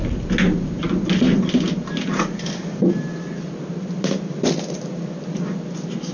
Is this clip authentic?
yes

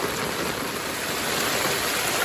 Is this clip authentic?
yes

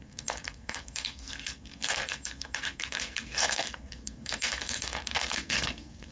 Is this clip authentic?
no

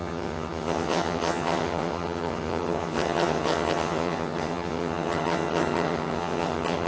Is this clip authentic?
no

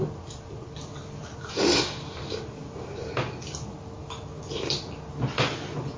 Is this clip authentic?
yes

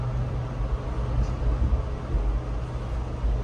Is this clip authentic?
yes